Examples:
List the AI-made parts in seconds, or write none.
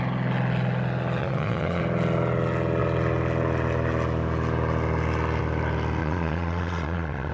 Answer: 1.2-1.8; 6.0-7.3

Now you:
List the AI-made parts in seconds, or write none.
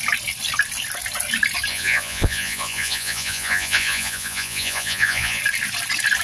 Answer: 1.7-5.4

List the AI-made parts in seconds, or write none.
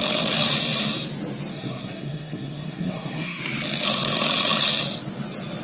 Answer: 1.5-3.4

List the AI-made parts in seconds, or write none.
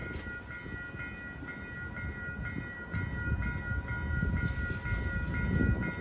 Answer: none